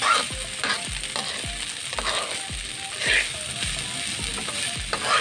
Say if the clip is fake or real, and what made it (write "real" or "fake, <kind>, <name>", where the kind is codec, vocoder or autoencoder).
real